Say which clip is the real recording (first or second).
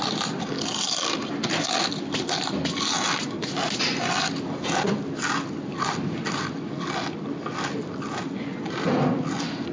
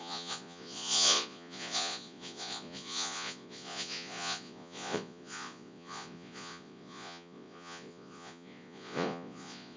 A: first